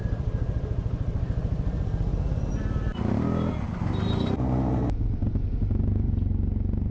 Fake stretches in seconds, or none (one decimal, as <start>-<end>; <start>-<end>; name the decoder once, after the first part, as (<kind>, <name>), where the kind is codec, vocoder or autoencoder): 0.0-3.0 (vocoder, BigVGAN v2)